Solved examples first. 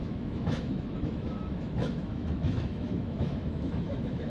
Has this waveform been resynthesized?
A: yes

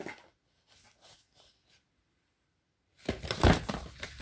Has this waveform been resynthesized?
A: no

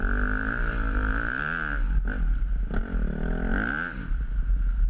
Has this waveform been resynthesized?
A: no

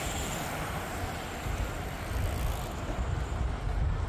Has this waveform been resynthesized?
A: no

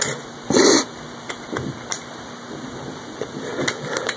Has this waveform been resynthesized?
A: no